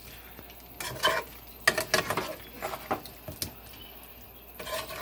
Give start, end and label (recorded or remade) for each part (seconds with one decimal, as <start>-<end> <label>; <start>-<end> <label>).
0.0-5.0 recorded